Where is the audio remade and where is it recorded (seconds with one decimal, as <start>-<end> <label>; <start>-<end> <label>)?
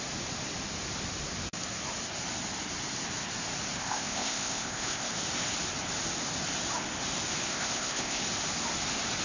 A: 0.0-3.8 recorded; 3.8-5.1 remade; 5.1-7.5 recorded; 7.5-8.2 remade; 8.2-9.2 recorded